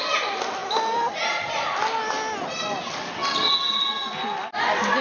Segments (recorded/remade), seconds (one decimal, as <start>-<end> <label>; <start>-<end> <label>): 0.0-5.0 recorded